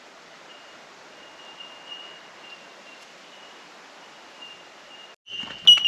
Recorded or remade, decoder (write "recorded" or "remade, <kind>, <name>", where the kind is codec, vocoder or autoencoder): recorded